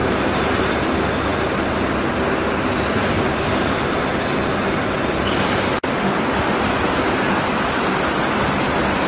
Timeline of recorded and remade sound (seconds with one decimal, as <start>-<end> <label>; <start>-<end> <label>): 0.0-0.9 remade; 0.9-3.0 recorded; 3.0-5.9 remade; 5.9-9.1 recorded